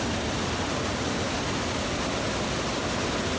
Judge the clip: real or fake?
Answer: real